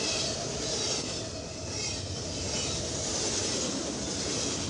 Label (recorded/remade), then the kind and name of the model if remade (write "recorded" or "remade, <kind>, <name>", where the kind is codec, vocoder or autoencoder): recorded